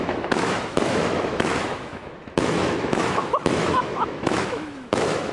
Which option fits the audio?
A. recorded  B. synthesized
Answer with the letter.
B